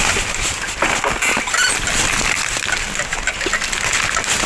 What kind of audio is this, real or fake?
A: real